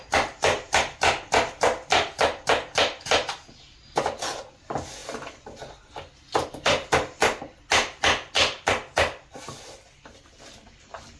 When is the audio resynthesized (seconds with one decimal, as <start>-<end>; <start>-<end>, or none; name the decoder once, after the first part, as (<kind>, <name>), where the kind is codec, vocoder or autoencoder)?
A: 0.0-5.0 (vocoder, BigVGAN v2); 6.5-7.2; 8.6-11.2